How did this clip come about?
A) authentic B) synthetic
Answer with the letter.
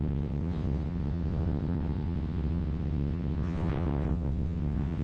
B